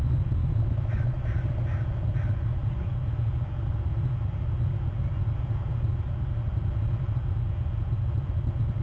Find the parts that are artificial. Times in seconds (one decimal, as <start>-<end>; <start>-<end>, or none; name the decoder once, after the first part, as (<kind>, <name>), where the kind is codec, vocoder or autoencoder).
0.4-1.2 (autoencoder, DAC-VAE)